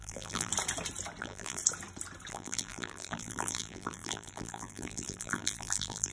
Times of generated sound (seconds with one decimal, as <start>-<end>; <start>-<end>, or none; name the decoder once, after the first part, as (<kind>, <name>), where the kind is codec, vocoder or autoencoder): 0.0-0.5 (vocoder, BigVGAN v2); 1.2-1.6; 2.3-6.1